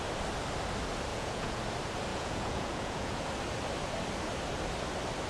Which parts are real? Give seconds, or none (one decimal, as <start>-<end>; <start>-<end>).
0.0-1.1; 1.6-2.1; 3.2-5.3